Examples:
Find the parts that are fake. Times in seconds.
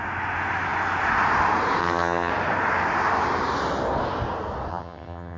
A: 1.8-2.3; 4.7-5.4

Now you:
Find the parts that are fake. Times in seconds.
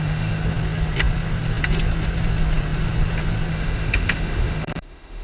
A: 0.0-0.4; 3.5-5.2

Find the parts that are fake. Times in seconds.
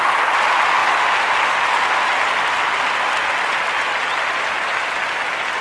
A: none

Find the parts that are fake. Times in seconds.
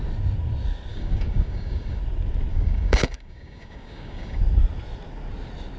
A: 0.9-2.0; 2.5-4.4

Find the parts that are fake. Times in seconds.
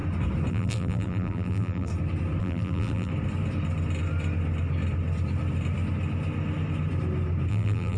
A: 0.5-1.9; 2.4-3.1; 7.5-8.0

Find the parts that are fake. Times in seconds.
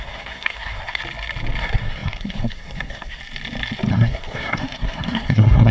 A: 0.0-1.0; 1.6-3.2; 3.9-5.7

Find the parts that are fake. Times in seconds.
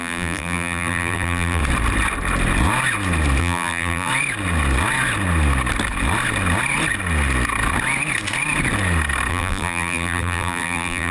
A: 0.0-1.6; 3.4-4.1; 9.3-11.1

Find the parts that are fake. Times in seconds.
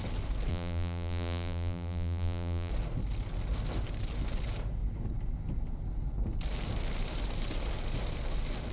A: 0.5-2.7